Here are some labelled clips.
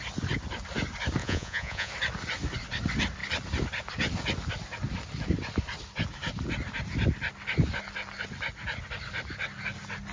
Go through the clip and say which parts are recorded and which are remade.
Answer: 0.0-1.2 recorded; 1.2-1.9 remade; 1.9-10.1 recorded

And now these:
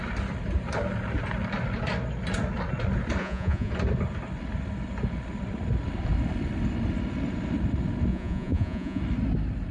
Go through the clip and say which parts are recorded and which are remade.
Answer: 0.0-3.2 recorded; 3.2-3.7 remade; 3.7-8.1 recorded; 8.1-9.0 remade; 9.0-9.7 recorded

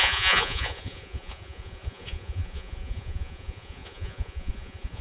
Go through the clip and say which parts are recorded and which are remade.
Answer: 0.0-5.0 remade